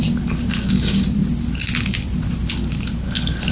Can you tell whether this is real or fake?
real